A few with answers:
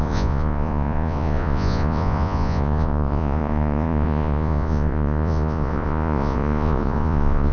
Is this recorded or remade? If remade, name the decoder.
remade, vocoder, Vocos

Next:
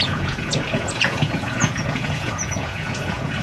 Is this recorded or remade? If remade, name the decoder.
remade, vocoder, Vocos